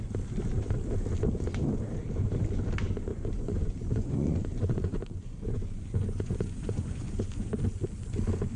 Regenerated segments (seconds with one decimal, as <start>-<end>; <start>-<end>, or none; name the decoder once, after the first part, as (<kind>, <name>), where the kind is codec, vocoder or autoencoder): 3.1-7.6 (vocoder, Vocos)